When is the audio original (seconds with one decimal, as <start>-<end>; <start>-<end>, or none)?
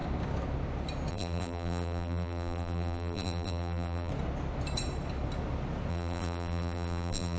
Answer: 0.0-1.1; 4.1-5.9